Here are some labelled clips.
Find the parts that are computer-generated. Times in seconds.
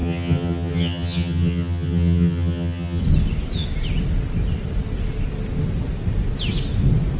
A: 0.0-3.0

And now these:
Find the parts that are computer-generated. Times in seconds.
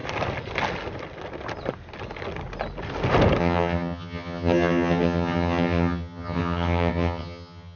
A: 3.4-7.8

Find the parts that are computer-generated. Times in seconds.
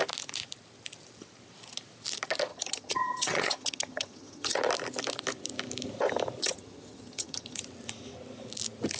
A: 2.5-4.6; 6.4-7.6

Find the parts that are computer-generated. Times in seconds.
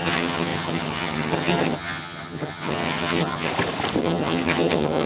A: 0.0-3.5; 4.0-5.1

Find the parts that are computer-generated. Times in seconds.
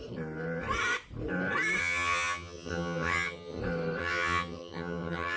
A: 1.8-3.6; 4.0-5.4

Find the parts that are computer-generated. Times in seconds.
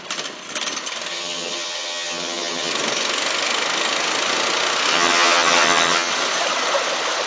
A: 1.1-2.7; 4.9-6.1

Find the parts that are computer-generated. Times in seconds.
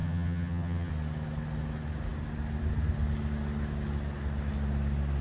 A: 0.0-0.9